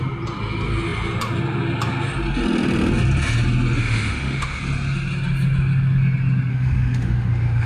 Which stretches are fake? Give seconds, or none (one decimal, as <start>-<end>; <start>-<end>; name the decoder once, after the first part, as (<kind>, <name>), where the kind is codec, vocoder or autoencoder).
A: 3.8-4.6 (autoencoder, DAC-VAE); 6.5-7.7